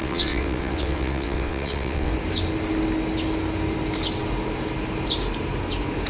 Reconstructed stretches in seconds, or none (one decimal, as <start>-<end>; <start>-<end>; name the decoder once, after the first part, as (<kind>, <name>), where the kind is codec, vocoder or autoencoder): 0.0-2.1 (vocoder, WaveNeXt)